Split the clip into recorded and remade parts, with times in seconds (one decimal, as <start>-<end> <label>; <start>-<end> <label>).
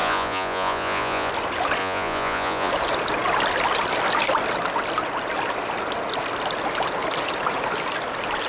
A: 0.0-1.3 remade; 1.3-1.8 recorded; 1.8-2.7 remade; 2.7-8.5 recorded